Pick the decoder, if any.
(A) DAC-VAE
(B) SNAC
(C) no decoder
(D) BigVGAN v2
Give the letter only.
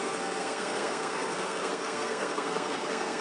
B